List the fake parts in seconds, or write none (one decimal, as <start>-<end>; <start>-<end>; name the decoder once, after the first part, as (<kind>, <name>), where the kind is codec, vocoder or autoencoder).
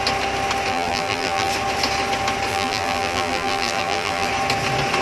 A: 0.7-1.5 (vocoder, BigVGAN v2); 2.5-4.3